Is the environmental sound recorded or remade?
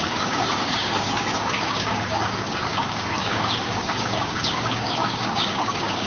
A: remade